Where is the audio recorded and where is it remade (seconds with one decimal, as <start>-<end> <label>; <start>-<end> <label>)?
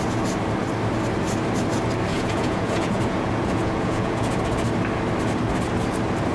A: 0.0-2.1 recorded; 2.1-4.4 remade; 4.4-6.3 recorded